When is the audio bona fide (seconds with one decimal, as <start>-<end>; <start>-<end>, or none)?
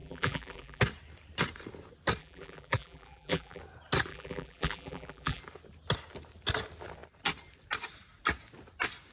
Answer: 0.8-2.2; 3.6-4.1; 5.4-9.1